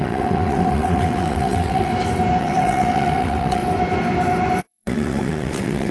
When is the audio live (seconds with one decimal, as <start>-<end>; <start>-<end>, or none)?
1.9-2.4; 3.6-4.6

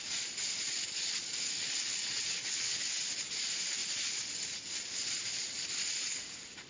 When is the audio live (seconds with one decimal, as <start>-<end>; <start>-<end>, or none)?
0.0-2.0; 2.8-6.7

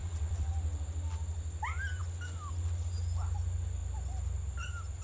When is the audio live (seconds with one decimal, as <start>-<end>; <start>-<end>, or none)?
0.5-5.0